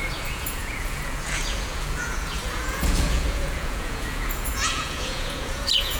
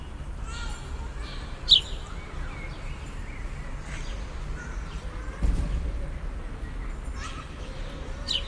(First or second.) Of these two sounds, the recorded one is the second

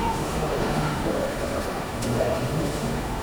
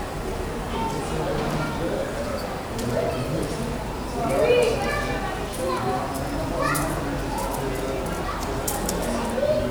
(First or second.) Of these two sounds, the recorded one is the second